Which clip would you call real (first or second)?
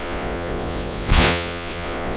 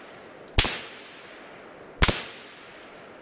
second